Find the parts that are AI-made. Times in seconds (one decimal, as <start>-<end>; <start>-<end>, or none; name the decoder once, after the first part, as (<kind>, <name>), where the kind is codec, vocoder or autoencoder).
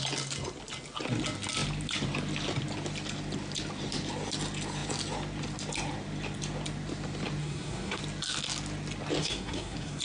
7.4-8.0 (codec, SNAC); 9.2-10.0